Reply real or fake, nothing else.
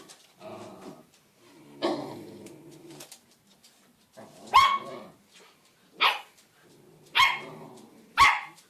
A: real